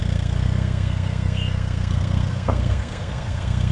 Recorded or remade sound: remade